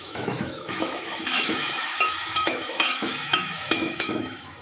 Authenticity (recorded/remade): remade